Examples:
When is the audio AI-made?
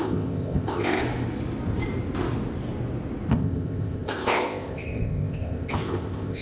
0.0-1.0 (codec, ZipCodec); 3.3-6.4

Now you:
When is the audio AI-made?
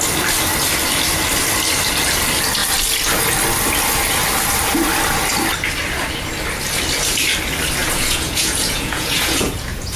7.8-10.0 (vocoder, Vocos)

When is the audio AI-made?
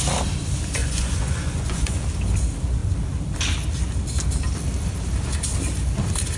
0.8-2.0 (vocoder, Vocos)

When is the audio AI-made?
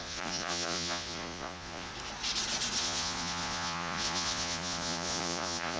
0.0-1.9 (vocoder, Vocos); 2.8-5.8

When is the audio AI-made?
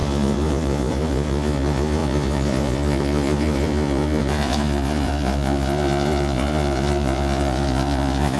0.0-8.4 (vocoder, Vocos)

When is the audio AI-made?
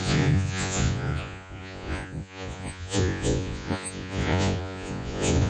0.0-5.5 (vocoder, Vocos)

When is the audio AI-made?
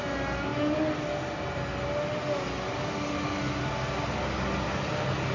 none